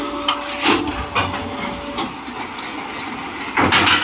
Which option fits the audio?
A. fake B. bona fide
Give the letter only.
B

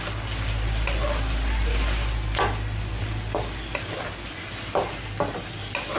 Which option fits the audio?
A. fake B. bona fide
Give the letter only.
B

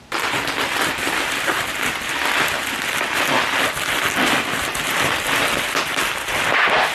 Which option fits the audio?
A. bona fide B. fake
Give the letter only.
A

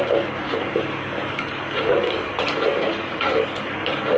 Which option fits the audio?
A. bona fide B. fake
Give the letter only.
B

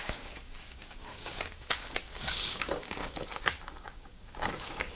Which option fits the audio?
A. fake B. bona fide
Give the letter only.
A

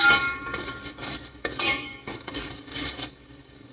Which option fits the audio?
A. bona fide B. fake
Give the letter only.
B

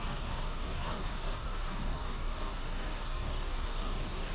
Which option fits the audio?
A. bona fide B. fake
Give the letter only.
B